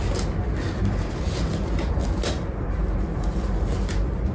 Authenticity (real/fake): real